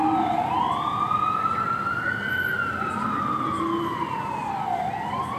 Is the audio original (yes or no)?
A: yes